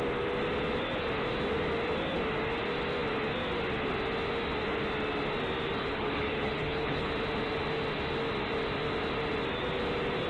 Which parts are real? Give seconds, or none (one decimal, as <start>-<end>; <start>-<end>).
0.0-5.8; 7.1-10.3